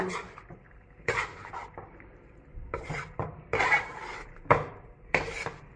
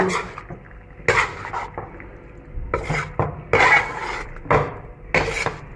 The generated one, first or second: first